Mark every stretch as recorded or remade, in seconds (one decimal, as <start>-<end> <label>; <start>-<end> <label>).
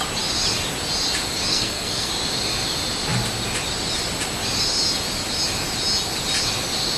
0.0-1.5 recorded; 1.5-2.1 remade; 2.1-7.0 recorded